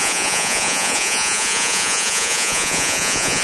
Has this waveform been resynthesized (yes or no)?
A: yes